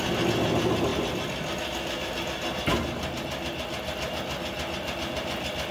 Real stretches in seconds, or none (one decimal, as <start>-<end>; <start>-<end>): 0.0-5.7